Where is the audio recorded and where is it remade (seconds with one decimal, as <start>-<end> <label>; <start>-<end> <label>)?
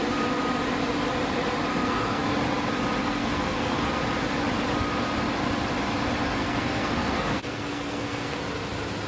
0.0-1.7 recorded; 1.7-2.3 remade; 2.3-3.0 recorded; 3.0-4.0 remade; 4.0-6.2 recorded; 6.2-8.4 remade; 8.4-9.1 recorded